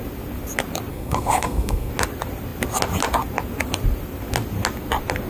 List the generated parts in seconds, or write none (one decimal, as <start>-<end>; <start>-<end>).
0.9-1.9